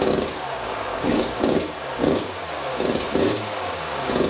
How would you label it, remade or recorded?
remade